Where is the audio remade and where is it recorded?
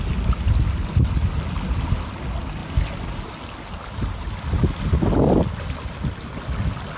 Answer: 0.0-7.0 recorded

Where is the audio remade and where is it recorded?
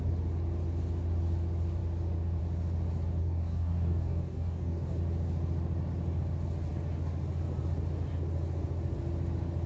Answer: 0.0-3.2 recorded; 3.2-5.0 remade; 5.0-9.7 recorded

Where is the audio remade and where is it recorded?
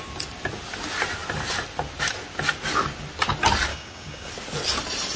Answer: 0.0-3.7 recorded; 3.7-4.3 remade; 4.3-5.2 recorded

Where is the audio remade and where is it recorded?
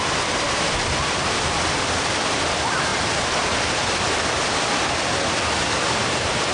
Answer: 0.0-6.5 recorded